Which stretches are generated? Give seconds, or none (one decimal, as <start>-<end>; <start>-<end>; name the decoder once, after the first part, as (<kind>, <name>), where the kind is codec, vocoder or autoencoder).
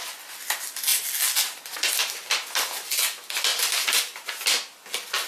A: 3.5-4.3 (vocoder, BigVGAN v2)